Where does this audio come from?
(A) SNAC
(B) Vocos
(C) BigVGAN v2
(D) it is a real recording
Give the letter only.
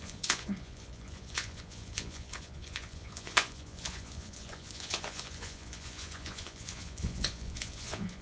B